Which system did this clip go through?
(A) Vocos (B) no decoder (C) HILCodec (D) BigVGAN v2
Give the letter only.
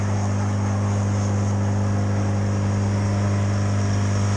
B